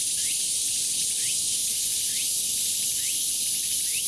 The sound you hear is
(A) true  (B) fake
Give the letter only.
A